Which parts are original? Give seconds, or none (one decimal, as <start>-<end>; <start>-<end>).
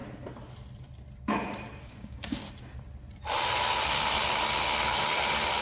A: 0.0-1.8; 2.4-5.6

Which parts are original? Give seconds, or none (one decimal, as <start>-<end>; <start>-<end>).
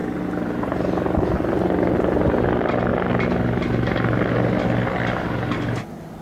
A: 0.0-6.2